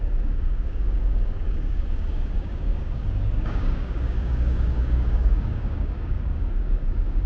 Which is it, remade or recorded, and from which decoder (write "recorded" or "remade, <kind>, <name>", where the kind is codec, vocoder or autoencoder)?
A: remade, codec, DAC